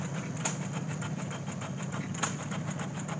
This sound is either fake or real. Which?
real